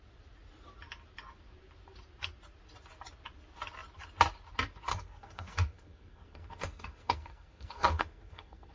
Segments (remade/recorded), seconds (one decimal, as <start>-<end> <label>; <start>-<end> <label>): 0.0-4.9 recorded; 4.9-8.7 remade